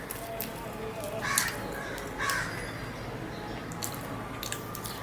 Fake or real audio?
real